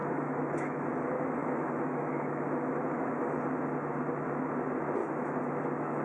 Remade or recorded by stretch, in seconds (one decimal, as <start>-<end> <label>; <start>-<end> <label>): 0.0-0.9 remade; 0.9-1.4 recorded; 1.4-3.4 remade; 3.4-5.0 recorded; 5.0-6.0 remade